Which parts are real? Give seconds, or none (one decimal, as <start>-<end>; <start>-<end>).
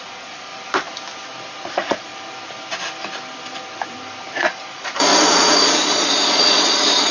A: 0.5-1.7; 2.1-4.4